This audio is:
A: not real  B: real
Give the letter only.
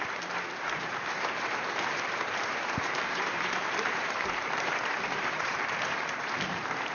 A